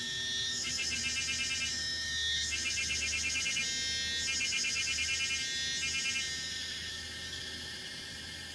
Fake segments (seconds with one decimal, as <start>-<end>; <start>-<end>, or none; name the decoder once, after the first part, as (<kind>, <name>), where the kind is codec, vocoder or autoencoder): 0.0-1.0 (autoencoder, DAC-VAE); 1.7-3.6; 4.4-5.1; 6.9-8.5